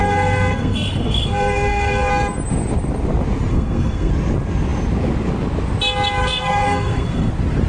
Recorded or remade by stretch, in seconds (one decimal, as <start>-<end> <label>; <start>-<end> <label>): 0.0-2.1 remade; 2.1-3.5 recorded; 3.5-4.1 remade; 4.1-6.2 recorded; 6.2-7.3 remade; 7.3-7.7 recorded